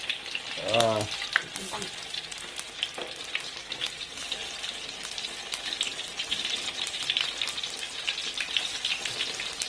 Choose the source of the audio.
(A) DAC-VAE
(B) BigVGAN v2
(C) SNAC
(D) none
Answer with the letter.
D